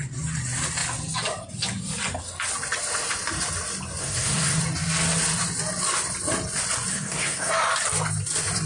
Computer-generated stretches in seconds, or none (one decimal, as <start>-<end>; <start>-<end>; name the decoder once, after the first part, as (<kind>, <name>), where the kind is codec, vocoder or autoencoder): 4.0-4.6 (codec, SNAC); 6.9-7.5